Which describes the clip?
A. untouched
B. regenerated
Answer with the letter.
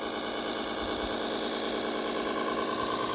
A